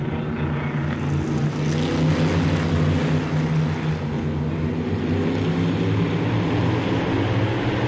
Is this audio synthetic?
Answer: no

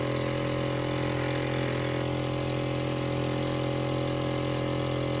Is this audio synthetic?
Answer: no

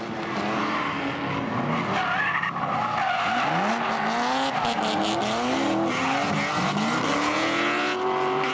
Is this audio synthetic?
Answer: no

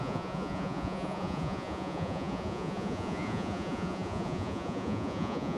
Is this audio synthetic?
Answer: yes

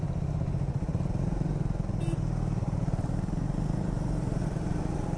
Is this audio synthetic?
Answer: no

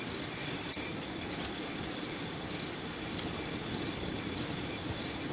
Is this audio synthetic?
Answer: no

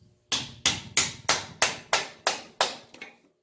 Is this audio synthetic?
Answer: no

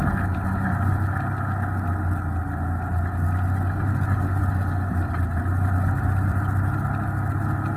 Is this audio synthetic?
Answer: no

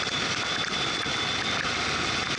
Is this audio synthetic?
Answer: no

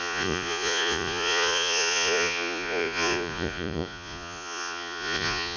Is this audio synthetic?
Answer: yes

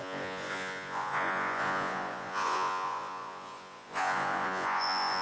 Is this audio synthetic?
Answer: yes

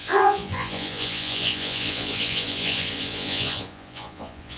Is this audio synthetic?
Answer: yes